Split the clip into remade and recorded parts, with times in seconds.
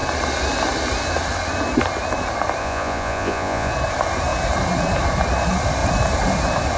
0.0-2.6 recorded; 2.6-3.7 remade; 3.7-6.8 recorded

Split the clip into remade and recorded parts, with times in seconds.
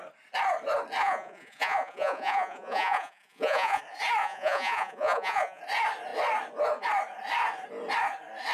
0.0-1.0 recorded; 1.0-3.8 remade; 3.8-4.2 recorded; 4.2-5.6 remade; 5.6-8.5 recorded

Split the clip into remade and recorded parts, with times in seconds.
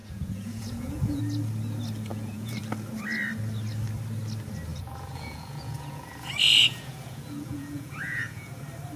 0.0-1.2 remade; 1.2-2.1 recorded; 2.1-2.6 remade; 2.6-4.7 recorded; 4.7-8.5 remade; 8.5-9.0 recorded